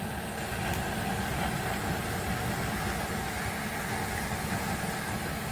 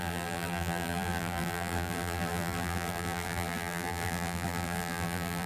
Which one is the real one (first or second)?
first